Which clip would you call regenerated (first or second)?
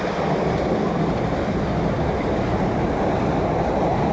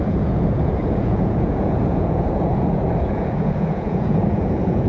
second